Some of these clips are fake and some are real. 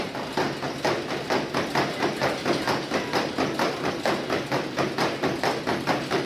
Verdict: real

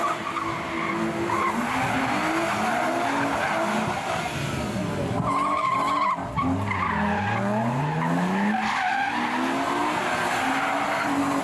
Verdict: real